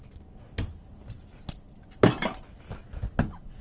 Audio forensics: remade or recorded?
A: recorded